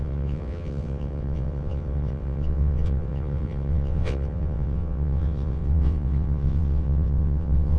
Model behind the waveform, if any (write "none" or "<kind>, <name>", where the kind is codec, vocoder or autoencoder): vocoder, WaveNeXt